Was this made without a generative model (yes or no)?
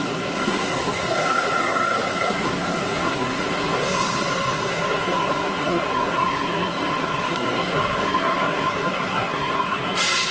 no